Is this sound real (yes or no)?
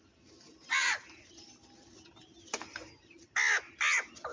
yes